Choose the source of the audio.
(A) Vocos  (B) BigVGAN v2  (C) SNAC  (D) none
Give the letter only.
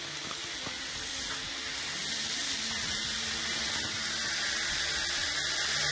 D